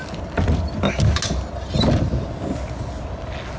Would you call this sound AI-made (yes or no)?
no